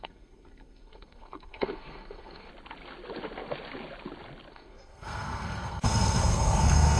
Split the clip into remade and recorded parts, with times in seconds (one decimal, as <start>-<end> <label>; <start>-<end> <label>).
0.0-2.5 remade; 2.5-4.5 recorded; 4.5-7.0 remade